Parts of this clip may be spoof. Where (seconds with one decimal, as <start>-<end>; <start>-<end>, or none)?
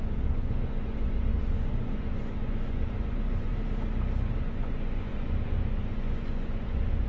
0.0-3.5; 4.4-7.1